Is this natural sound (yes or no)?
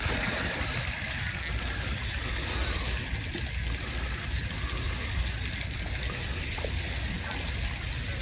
yes